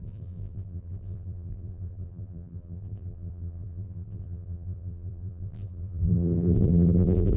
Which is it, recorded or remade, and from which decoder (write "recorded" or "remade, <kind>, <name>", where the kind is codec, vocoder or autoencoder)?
remade, vocoder, BigVGAN v2